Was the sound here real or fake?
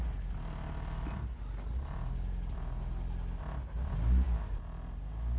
real